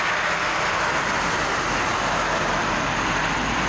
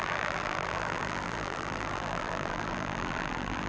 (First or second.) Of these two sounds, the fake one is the second